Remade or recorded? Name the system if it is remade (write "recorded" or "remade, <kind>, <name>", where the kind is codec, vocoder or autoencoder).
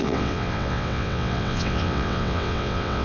remade, vocoder, WaveNeXt